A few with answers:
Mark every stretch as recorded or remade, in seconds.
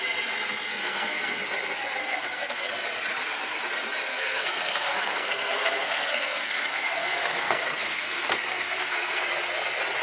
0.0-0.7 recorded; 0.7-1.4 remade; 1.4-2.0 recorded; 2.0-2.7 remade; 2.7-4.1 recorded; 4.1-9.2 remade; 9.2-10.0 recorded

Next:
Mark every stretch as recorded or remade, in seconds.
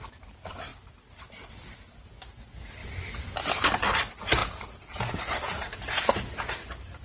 0.0-4.4 recorded; 4.4-6.0 remade; 6.0-7.0 recorded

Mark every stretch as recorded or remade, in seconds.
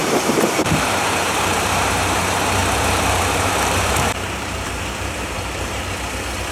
0.0-2.2 remade; 2.2-2.6 recorded; 2.6-5.8 remade; 5.8-6.5 recorded